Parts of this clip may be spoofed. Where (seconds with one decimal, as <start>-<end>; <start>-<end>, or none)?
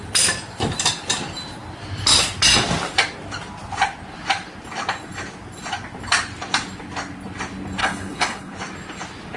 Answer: 7.8-8.5